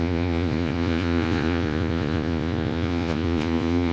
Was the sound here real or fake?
fake